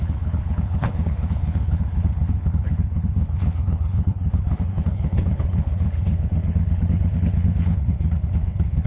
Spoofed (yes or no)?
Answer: yes